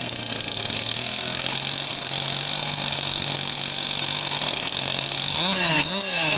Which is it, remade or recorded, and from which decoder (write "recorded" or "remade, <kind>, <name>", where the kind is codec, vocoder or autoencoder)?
remade, codec, SNAC